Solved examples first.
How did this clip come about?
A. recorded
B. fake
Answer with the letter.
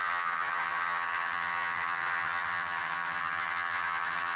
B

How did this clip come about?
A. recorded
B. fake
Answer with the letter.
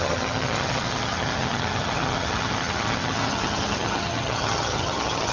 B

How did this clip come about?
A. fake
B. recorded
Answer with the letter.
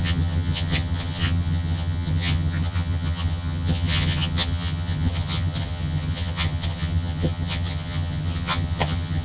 A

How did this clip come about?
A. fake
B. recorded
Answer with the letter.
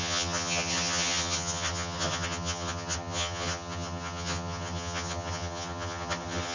A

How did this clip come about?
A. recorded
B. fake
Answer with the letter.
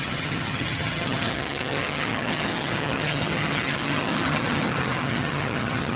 B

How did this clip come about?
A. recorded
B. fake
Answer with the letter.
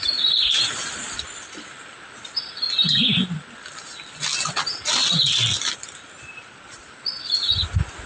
A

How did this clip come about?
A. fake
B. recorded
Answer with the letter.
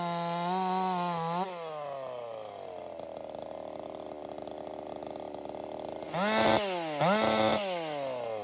B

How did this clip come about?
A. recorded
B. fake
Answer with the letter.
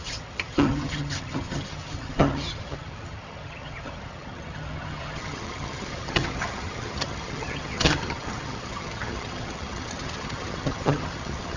B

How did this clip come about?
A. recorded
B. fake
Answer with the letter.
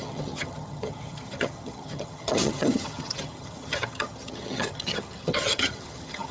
B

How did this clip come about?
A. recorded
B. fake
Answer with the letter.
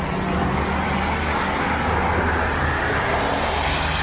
A